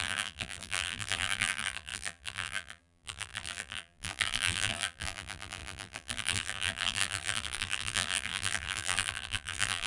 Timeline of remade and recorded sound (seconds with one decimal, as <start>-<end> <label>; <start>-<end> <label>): 0.0-9.9 remade

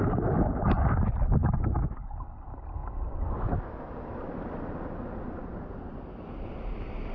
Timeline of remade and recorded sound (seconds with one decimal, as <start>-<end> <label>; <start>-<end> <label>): 0.0-7.1 recorded

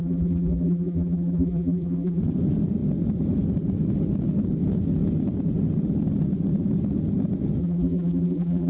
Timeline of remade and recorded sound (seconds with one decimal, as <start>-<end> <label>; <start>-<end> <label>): 0.0-2.2 remade; 2.2-7.6 recorded; 7.6-8.7 remade

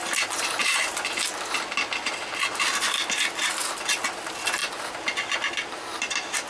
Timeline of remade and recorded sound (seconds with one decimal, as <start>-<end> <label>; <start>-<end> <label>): 0.0-6.5 recorded

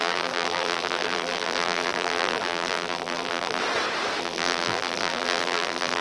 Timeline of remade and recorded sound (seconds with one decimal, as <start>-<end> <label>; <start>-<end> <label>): 0.0-3.6 remade; 3.6-4.2 recorded; 4.2-6.0 remade